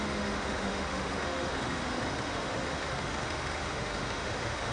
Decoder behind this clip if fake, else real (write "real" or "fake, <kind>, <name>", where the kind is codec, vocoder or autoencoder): fake, autoencoder, DAC-VAE